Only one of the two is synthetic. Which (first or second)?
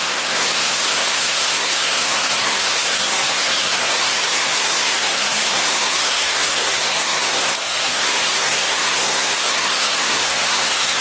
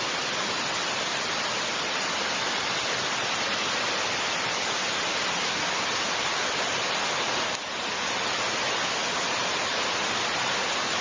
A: first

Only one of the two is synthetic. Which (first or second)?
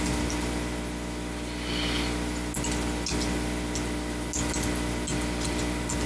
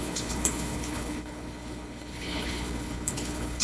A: second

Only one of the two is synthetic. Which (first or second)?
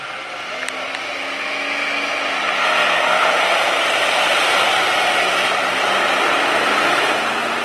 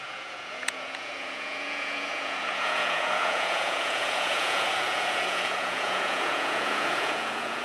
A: second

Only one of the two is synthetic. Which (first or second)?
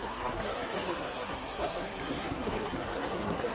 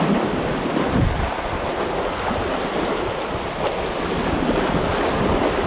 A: first